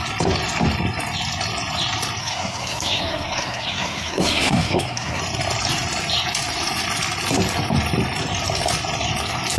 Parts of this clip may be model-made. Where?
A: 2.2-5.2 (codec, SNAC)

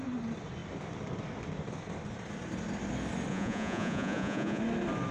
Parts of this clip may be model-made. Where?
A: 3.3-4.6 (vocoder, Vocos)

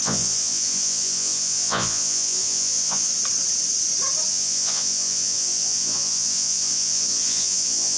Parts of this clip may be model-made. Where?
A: 0.0-3.1 (vocoder, Vocos); 4.3-8.0

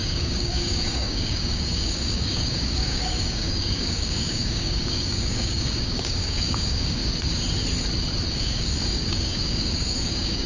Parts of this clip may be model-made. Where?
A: 0.0-7.0 (codec, DAC); 8.3-10.5

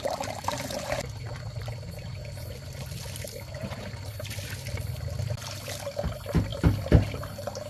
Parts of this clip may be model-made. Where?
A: none